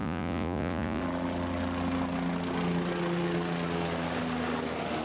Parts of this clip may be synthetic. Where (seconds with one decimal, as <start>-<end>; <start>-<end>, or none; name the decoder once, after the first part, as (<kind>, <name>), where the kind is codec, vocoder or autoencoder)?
0.0-1.0 (vocoder, Vocos)